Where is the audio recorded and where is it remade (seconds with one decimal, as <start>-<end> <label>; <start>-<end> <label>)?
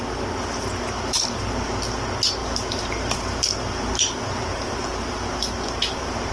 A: 0.0-2.4 recorded; 2.4-6.3 remade